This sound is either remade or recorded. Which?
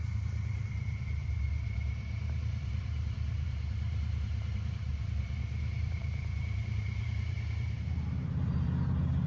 remade